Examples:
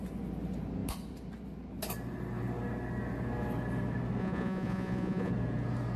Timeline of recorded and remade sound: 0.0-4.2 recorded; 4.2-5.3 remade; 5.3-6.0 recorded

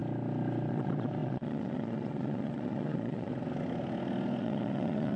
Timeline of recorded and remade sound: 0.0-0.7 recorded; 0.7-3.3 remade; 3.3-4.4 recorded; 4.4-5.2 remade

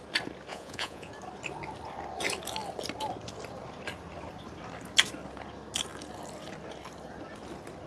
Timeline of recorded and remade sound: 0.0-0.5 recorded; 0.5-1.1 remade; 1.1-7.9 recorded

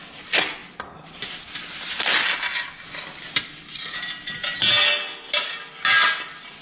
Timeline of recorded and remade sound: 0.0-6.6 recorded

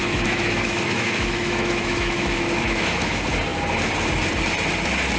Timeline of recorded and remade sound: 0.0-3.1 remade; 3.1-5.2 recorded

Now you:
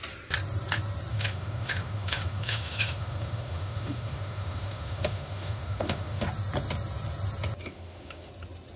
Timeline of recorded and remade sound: 0.0-1.1 recorded; 1.1-6.2 remade; 6.2-7.6 recorded; 7.6-8.3 remade; 8.3-8.8 recorded